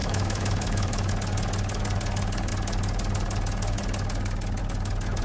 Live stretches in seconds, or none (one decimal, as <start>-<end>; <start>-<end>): 1.1-5.2